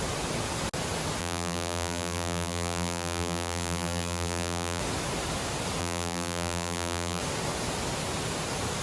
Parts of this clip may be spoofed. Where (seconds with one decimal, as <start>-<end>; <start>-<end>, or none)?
1.2-4.8; 5.8-7.2